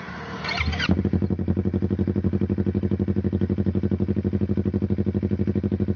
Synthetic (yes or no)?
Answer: no